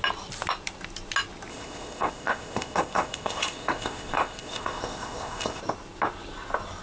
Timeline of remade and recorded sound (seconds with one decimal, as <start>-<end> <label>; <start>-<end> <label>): 0.0-1.5 recorded; 1.5-5.6 remade; 5.6-6.8 recorded